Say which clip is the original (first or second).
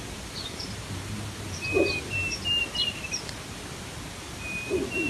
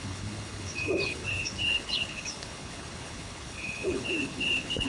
first